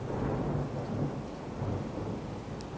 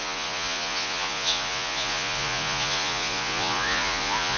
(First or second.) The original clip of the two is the first